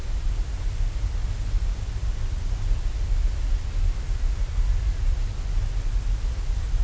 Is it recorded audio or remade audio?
recorded